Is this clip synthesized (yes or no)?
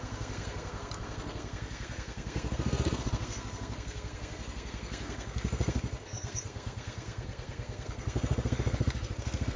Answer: yes